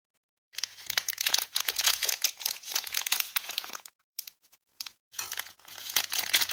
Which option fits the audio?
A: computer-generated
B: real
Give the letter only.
A